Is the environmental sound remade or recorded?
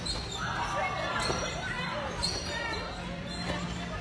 recorded